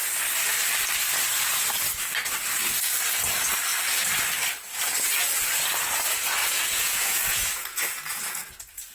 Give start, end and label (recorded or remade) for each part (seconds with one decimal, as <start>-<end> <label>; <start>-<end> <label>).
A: 0.0-6.4 recorded; 6.4-8.2 remade; 8.2-8.9 recorded